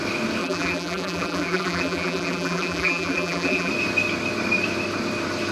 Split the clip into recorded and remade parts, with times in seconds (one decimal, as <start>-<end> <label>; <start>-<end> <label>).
0.0-0.4 recorded; 0.4-3.7 remade; 3.7-5.5 recorded